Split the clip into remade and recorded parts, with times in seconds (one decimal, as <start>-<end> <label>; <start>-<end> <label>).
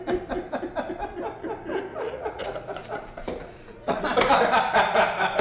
0.0-1.9 recorded; 1.9-4.0 remade; 4.0-5.4 recorded